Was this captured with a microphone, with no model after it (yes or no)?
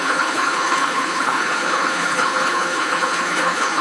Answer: no